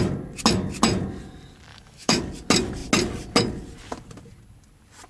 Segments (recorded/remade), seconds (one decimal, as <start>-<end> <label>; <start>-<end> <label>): 0.0-1.7 recorded; 1.7-2.2 remade; 2.2-5.1 recorded